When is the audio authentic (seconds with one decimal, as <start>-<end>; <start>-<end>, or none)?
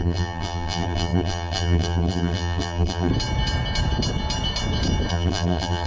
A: 3.1-5.1